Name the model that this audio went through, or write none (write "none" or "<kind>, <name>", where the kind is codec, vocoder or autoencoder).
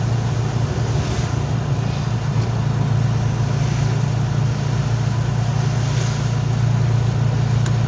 none